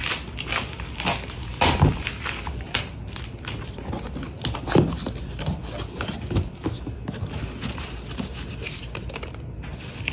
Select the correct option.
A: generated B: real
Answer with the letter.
B